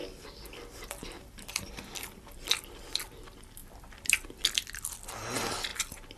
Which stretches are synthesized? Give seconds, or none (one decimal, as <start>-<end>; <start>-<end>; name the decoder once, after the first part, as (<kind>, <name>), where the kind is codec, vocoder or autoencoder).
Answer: 0.0-3.0 (vocoder, BigVGAN v2); 3.6-4.8; 5.7-6.2